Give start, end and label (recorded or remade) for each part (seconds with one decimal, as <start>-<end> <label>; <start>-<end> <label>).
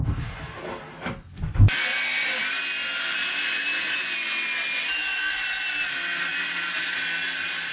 0.0-7.7 recorded